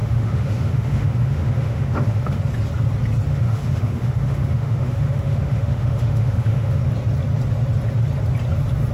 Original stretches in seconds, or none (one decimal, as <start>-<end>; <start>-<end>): 2.4-3.3; 6.8-8.9